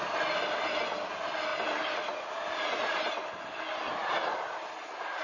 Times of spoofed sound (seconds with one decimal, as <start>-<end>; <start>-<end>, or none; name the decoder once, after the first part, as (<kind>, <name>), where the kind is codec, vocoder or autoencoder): none